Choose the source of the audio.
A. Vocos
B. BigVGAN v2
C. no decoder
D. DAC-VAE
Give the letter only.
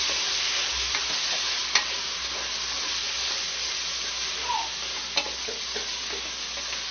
C